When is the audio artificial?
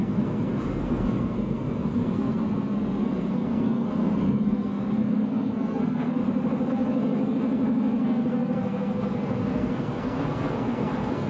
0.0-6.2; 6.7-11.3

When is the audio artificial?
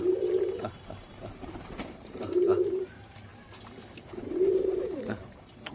0.0-3.3; 4.1-5.7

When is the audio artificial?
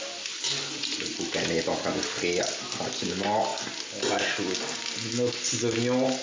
none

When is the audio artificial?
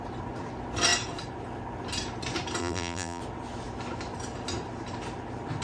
2.6-3.2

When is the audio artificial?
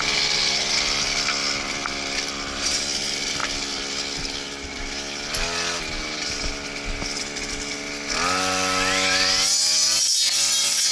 none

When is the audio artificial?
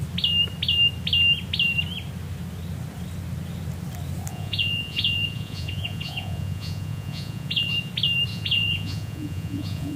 4.3-7.9; 8.3-10.0